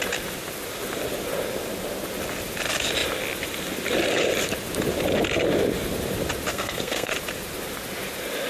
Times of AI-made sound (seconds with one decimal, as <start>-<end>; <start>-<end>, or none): 6.5-7.1